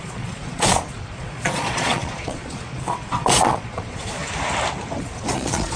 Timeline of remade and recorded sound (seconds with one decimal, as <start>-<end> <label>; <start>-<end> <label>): 0.0-4.2 remade; 4.2-5.0 recorded; 5.0-5.8 remade